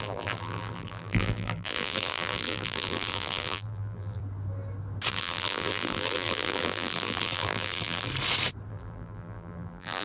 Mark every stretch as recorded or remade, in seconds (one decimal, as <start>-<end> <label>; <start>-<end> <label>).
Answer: 0.0-4.2 remade; 4.2-5.1 recorded; 5.1-8.1 remade; 8.1-8.7 recorded; 8.7-10.0 remade